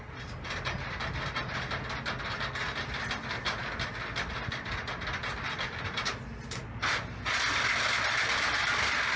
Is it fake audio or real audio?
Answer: real